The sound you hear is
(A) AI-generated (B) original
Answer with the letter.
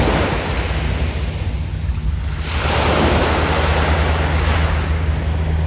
B